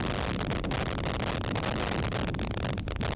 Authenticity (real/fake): fake